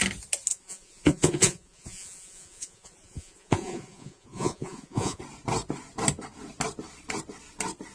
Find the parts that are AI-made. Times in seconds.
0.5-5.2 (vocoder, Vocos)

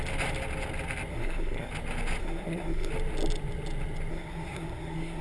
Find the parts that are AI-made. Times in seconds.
1.1-1.7 (codec, SNAC); 2.2-2.9; 4.1-5.2

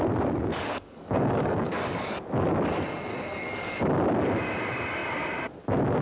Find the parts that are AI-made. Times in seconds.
0.5-2.1 (codec, DAC); 3.1-3.8

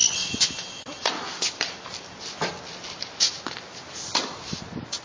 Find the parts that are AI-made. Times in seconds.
none